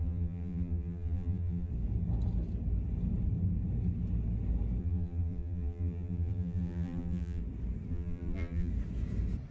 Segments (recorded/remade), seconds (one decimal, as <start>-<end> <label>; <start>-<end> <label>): 0.0-1.7 remade; 1.7-4.8 recorded; 4.8-7.4 remade; 7.4-7.9 recorded; 7.9-8.7 remade; 8.7-9.5 recorded